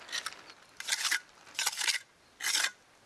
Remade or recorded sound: recorded